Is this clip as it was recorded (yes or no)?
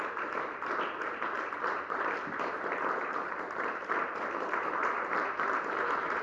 no